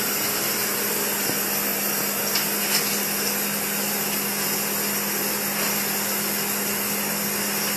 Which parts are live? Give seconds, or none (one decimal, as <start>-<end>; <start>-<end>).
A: 0.0-7.8